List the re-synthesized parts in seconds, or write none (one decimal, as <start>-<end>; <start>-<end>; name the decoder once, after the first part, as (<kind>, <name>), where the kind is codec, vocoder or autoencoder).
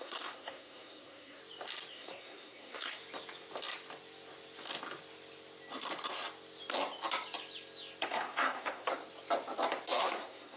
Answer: 0.0-1.4 (codec, SNAC); 1.9-3.0; 8.0-8.9; 10.0-10.6